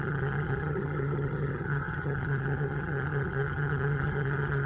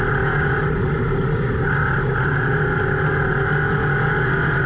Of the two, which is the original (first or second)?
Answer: second